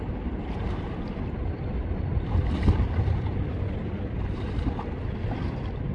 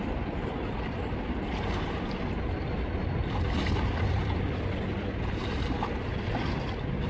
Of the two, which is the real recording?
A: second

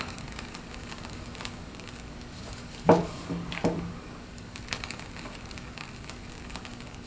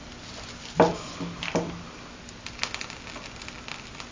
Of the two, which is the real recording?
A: second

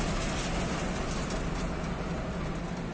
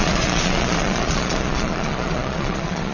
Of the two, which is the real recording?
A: first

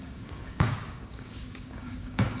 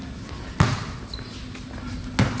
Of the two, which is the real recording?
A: second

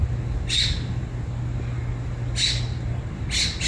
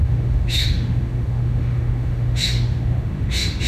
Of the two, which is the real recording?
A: first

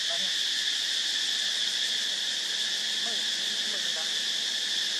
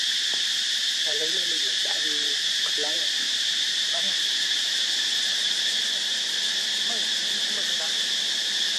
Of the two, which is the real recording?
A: first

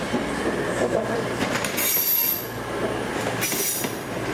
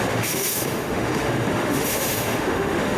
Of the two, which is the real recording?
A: first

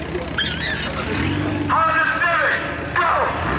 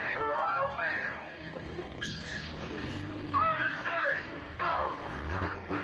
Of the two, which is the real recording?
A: first